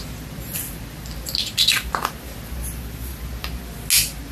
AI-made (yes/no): no